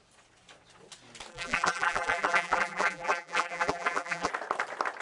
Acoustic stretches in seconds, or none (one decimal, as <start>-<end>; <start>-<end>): 0.0-1.3; 4.3-5.0